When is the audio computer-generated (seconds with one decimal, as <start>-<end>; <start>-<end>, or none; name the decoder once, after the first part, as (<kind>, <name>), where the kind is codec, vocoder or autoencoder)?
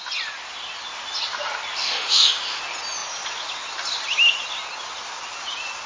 1.8-2.6 (autoencoder, DAC-VAE)